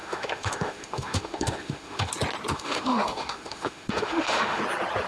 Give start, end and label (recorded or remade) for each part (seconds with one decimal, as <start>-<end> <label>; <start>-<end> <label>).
0.0-2.1 remade; 2.1-2.5 recorded; 2.5-4.6 remade; 4.6-5.1 recorded

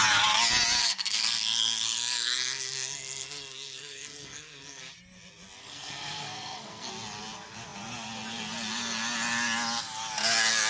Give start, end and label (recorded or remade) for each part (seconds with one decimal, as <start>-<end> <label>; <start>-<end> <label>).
0.0-0.8 recorded; 0.8-4.8 remade; 4.8-5.6 recorded; 5.6-6.9 remade; 6.9-10.7 recorded

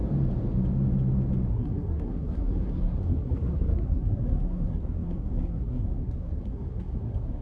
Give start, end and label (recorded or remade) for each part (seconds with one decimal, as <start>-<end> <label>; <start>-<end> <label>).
0.0-1.5 recorded; 1.5-7.4 remade

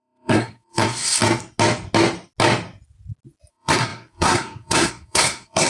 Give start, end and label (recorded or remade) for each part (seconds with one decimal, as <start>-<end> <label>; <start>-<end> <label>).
0.0-1.2 remade; 1.2-3.5 recorded; 3.5-5.7 remade

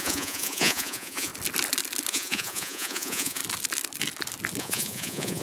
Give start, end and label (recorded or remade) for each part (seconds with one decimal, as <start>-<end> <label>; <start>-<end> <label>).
0.0-1.3 remade; 1.3-2.1 recorded; 2.1-3.4 remade; 3.4-4.6 recorded; 4.6-5.4 remade

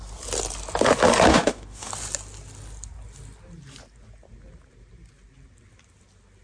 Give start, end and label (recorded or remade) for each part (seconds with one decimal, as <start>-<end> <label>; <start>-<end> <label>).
0.0-1.3 recorded; 1.3-1.9 remade; 1.9-6.4 recorded